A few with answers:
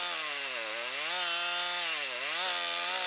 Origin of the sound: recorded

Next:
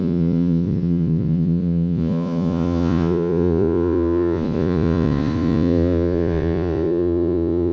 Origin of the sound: remade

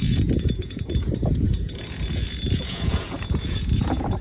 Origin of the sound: remade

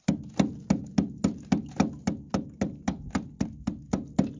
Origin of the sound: recorded